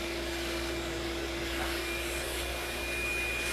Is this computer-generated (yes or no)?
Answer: yes